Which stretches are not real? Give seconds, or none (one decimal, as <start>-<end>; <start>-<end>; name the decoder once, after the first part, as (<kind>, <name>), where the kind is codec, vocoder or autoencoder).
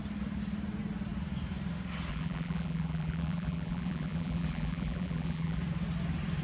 2.1-5.6 (vocoder, BigVGAN v2)